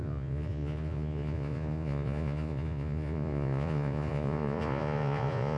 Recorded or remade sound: remade